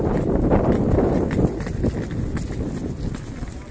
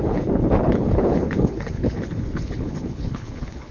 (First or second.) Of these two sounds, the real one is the first